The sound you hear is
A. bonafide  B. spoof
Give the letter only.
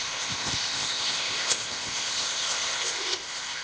B